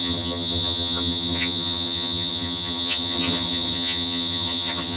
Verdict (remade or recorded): remade